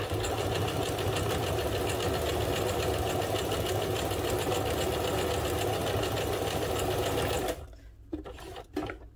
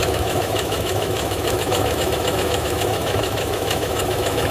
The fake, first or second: second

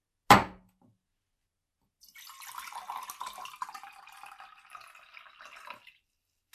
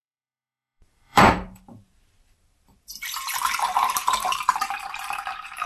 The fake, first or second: second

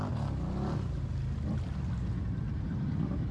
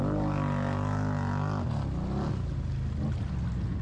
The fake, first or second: first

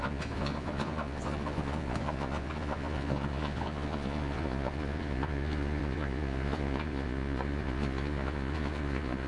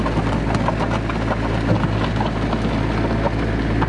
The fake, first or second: first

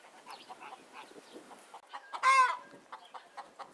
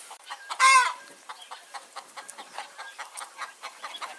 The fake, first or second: second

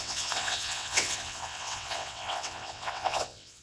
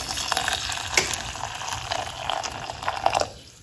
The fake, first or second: first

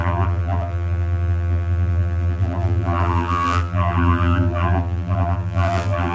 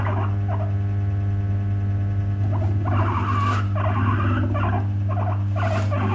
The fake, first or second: first